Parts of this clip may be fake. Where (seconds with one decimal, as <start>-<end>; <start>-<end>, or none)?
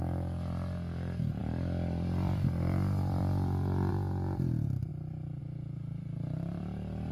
0.0-4.9; 5.4-7.1